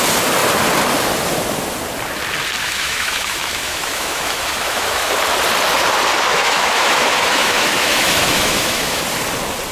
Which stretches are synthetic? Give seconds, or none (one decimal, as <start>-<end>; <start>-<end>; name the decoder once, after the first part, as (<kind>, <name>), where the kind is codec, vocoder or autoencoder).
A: 2.6-5.1 (autoencoder, DAC-VAE); 6.3-9.0